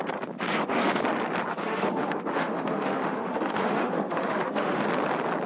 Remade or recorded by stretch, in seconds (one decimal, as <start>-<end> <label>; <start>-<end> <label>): 0.0-0.5 recorded; 0.5-1.0 remade; 1.0-1.5 recorded; 1.5-4.8 remade; 4.8-5.5 recorded

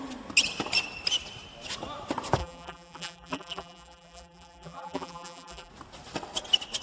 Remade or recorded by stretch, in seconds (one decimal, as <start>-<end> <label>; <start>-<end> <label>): 0.0-2.4 recorded; 2.4-5.7 remade; 5.7-6.8 recorded

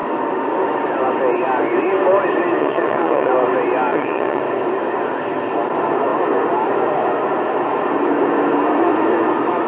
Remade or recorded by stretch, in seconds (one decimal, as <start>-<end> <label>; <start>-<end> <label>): 0.0-2.6 recorded; 2.6-3.3 remade; 3.3-3.9 recorded; 3.9-4.4 remade; 4.4-9.7 recorded

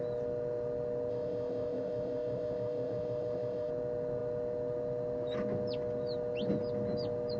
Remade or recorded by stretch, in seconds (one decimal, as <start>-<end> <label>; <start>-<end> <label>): 0.0-1.1 recorded; 1.1-3.7 remade; 3.7-7.4 recorded